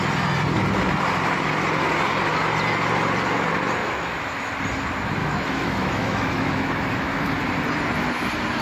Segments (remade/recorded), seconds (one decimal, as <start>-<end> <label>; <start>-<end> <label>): 0.0-3.8 recorded; 3.8-4.5 remade; 4.5-5.2 recorded; 5.2-7.3 remade; 7.3-8.6 recorded